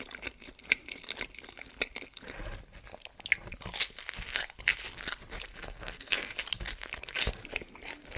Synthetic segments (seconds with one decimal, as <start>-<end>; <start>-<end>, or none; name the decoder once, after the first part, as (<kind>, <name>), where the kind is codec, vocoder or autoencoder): 5.5-6.3 (codec, SNAC)